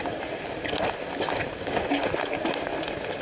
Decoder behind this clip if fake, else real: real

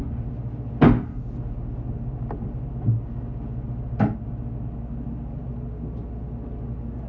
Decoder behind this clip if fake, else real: real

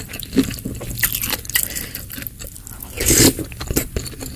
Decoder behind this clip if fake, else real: real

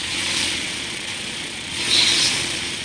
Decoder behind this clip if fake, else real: fake, vocoder, Vocos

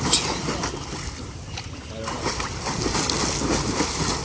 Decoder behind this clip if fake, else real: real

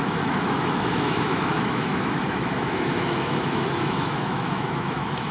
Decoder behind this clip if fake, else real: fake, autoencoder, DAC-VAE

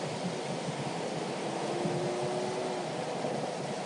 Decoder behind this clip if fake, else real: real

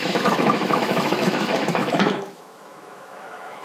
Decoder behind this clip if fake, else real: fake, autoencoder, DAC-VAE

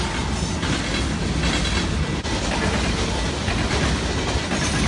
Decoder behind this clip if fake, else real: real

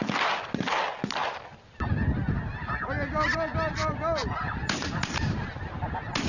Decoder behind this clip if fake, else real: real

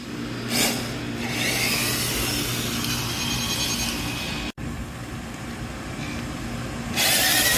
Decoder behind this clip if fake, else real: real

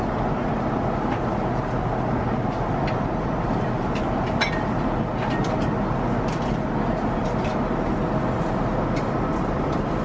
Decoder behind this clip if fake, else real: real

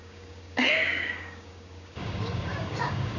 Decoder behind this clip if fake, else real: fake, codec, DAC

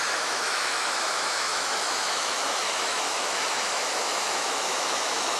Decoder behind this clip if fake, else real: fake, autoencoder, DAC-VAE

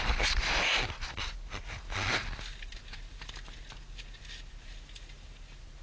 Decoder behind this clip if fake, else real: real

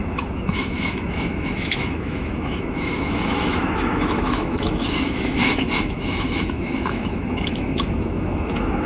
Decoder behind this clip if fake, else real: fake, autoencoder, DAC-VAE